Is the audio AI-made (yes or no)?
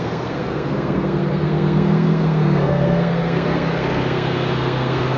yes